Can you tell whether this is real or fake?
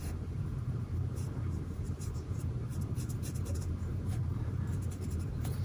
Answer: fake